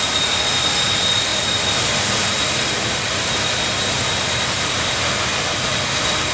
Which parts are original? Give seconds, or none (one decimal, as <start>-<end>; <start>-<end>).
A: 0.0-1.3; 5.1-6.3